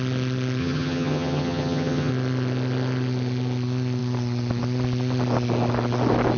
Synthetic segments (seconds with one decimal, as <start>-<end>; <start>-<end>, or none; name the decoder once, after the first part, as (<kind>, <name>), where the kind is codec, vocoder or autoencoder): 0.6-2.1 (vocoder, HiFi-GAN)